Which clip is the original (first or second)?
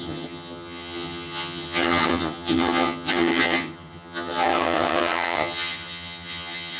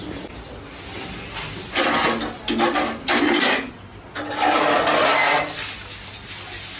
second